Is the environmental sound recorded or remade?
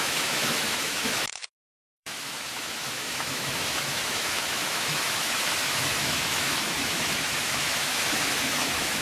remade